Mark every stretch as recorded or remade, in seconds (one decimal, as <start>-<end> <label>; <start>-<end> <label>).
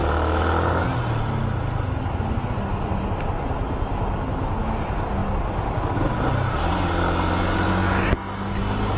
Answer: 0.0-9.0 recorded